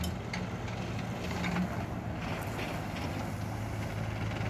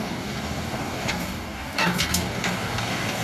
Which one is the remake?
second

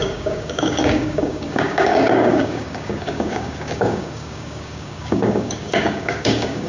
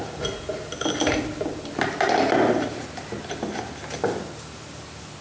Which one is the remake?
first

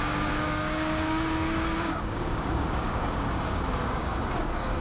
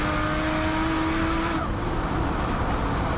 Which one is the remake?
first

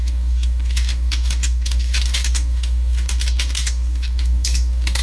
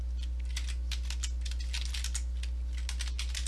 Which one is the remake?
first